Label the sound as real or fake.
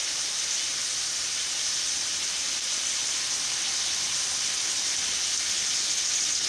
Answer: real